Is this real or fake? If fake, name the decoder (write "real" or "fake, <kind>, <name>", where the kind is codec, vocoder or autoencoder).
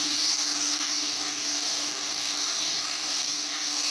fake, codec, DAC